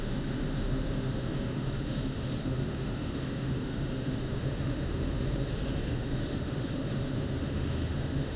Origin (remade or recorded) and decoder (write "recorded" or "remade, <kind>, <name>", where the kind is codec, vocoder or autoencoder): remade, autoencoder, DAC-VAE